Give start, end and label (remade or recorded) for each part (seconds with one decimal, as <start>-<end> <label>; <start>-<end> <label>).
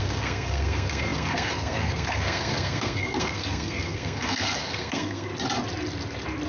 0.0-5.3 remade; 5.3-6.5 recorded